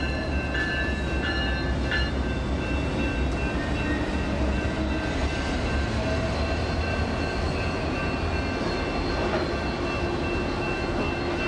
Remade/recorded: recorded